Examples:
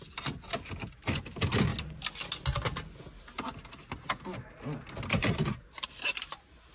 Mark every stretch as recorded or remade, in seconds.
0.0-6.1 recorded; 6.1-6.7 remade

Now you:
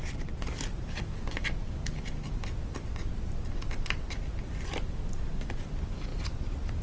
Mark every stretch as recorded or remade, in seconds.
0.0-6.1 recorded; 6.1-6.8 remade

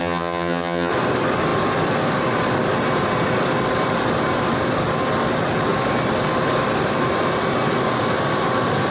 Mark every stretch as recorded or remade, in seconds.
0.0-0.9 remade; 0.9-8.9 recorded

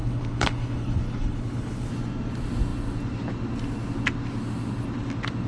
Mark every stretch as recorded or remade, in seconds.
0.0-1.9 remade; 1.9-5.5 recorded

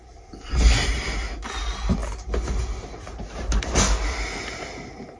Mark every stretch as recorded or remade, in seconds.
0.0-5.2 recorded

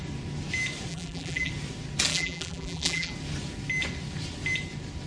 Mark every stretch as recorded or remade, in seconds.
0.0-0.9 recorded; 0.9-1.5 remade; 1.5-2.1 recorded; 2.1-3.1 remade; 3.1-5.1 recorded